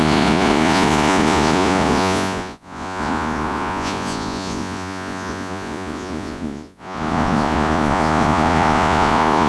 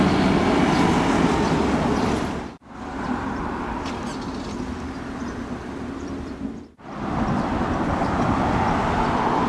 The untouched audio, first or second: second